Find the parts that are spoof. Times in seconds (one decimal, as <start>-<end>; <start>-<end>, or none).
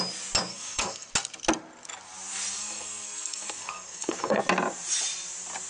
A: 0.5-1.1; 2.6-4.4